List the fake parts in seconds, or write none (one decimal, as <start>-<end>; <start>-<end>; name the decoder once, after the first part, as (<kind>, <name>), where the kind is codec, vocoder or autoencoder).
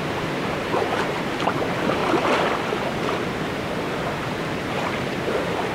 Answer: 0.0-2.0 (vocoder, BigVGAN v2); 4.3-5.7